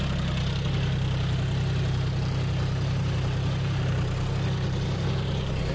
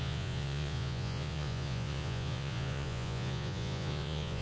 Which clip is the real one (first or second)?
first